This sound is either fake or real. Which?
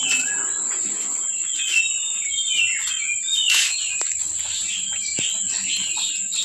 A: real